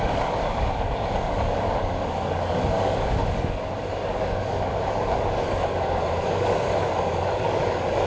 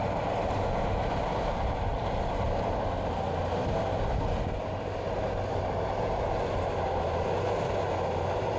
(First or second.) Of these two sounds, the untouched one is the second